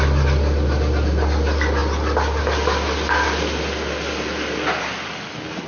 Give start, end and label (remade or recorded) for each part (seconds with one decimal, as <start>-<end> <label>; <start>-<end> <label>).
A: 0.0-5.7 recorded